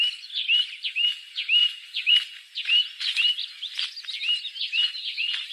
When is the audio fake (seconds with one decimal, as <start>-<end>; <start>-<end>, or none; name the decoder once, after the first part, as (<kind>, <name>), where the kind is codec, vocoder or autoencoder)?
1.6-2.1 (vocoder, BigVGAN v2)